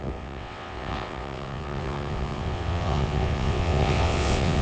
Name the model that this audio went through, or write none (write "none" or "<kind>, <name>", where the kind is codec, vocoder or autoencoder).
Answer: vocoder, WaveNeXt